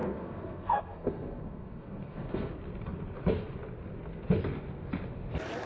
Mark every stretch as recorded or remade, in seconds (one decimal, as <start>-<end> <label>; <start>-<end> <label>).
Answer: 0.0-2.5 remade; 2.5-5.7 recorded